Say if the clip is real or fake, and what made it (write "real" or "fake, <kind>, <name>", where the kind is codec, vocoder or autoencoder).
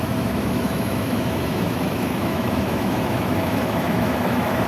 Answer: fake, autoencoder, DAC-VAE